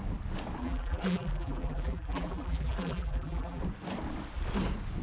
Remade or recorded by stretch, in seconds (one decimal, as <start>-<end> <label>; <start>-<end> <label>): 0.0-0.6 recorded; 0.6-3.6 remade; 3.6-5.0 recorded